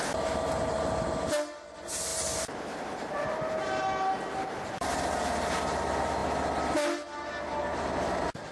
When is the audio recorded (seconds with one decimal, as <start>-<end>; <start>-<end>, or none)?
0.0-8.5